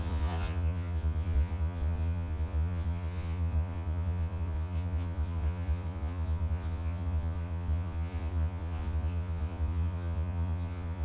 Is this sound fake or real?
fake